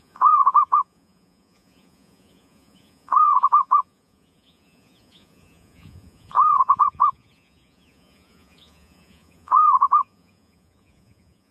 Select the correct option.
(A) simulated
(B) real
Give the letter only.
A